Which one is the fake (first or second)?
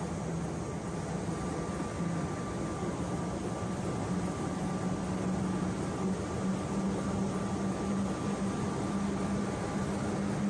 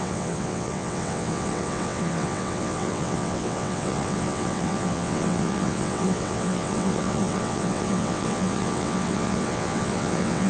second